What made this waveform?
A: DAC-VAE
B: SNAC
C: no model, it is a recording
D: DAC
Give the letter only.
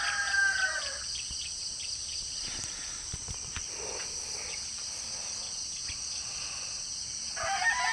C